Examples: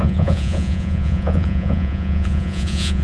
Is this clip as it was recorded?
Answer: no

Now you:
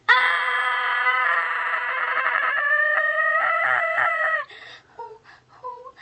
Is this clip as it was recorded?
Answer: no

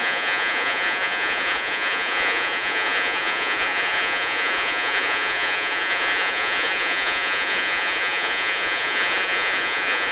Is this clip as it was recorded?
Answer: no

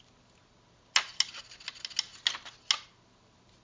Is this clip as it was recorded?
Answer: yes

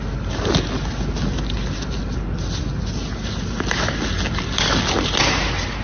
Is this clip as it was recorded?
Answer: yes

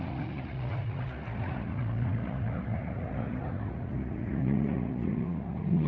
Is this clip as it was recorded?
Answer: no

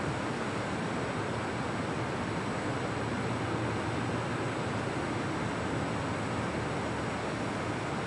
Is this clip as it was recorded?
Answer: yes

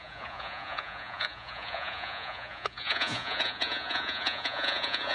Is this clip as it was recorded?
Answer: no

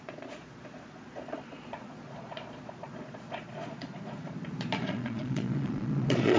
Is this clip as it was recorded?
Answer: no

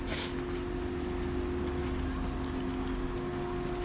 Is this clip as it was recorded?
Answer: yes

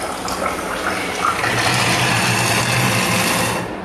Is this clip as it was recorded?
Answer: yes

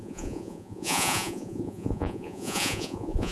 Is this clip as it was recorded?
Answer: no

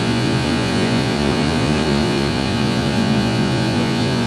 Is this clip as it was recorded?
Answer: no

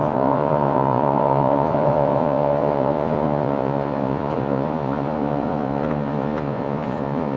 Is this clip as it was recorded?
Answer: no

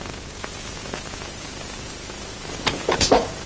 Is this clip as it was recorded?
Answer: no